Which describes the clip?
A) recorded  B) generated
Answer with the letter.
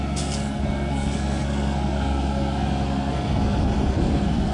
B